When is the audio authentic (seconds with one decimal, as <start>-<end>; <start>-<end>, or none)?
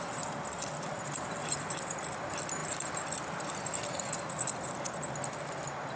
0.0-6.0